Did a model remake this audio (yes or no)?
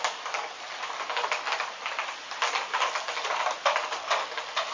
no